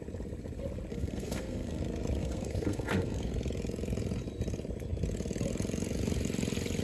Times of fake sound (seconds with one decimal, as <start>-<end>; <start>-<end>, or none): 0.9-1.8; 2.2-3.3